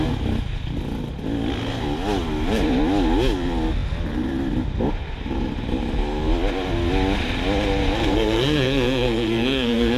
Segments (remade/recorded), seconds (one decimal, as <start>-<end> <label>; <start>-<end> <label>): 0.0-8.1 recorded; 8.1-10.0 remade